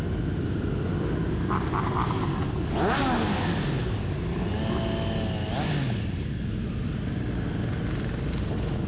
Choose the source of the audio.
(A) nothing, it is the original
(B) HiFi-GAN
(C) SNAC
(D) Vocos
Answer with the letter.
A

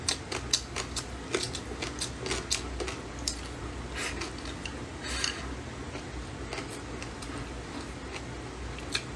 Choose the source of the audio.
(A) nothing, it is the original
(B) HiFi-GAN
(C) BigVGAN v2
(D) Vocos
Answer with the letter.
A